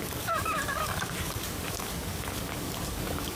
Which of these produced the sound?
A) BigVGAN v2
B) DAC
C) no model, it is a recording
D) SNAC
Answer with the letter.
B